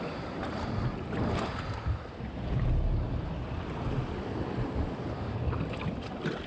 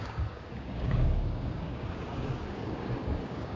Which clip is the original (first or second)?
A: first